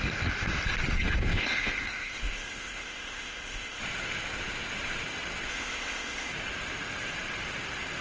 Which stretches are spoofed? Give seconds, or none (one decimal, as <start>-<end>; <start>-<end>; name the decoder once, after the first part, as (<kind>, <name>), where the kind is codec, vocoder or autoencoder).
1.2-3.8 (codec, ZipCodec); 5.5-6.3